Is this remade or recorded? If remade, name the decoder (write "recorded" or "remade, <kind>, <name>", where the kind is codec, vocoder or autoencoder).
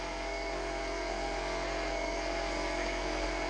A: remade, codec, SNAC